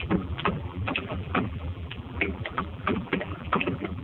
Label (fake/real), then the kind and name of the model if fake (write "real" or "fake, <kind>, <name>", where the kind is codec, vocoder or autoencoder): fake, vocoder, BigVGAN v2